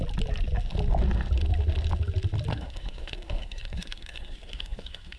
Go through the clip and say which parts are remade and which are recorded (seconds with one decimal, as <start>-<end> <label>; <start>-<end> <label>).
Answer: 0.0-2.5 recorded; 2.5-5.2 remade